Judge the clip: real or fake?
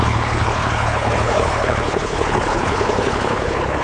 fake